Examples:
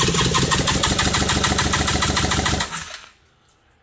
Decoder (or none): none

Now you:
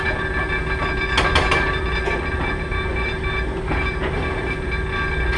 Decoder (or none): none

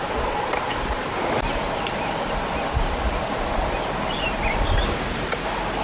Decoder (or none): none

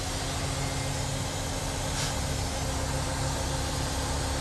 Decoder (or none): none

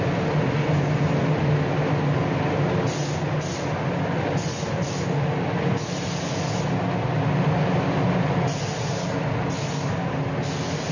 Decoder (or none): none